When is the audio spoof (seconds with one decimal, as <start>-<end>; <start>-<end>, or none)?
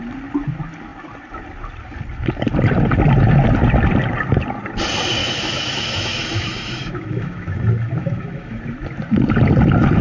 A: 5.2-8.6